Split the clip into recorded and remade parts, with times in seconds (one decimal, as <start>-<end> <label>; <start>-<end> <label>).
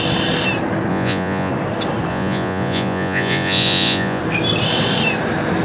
0.0-0.9 recorded; 0.9-1.5 remade; 1.5-2.1 recorded; 2.1-4.2 remade; 4.2-5.6 recorded